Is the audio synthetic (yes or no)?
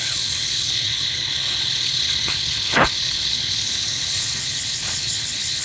yes